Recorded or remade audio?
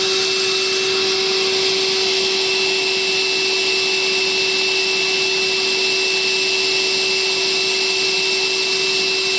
recorded